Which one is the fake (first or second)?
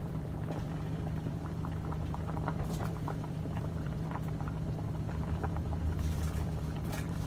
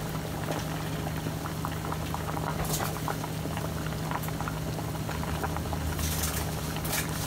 first